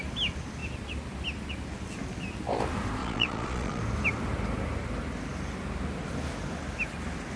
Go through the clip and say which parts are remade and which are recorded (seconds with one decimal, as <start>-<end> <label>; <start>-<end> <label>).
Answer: 0.0-3.0 recorded; 3.0-3.8 remade; 3.8-7.4 recorded